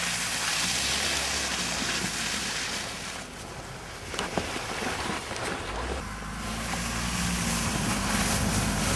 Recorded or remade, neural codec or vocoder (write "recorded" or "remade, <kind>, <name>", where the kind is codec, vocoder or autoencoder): recorded